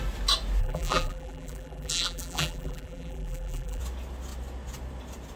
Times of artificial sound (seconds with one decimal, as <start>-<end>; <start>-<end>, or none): 0.6-3.8